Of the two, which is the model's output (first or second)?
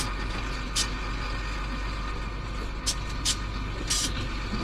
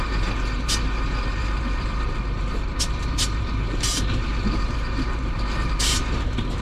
second